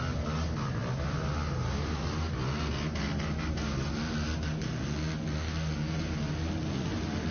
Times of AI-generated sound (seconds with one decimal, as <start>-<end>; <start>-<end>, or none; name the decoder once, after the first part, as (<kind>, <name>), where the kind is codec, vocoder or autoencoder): none